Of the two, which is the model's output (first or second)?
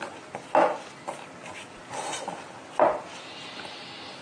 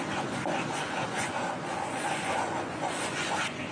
second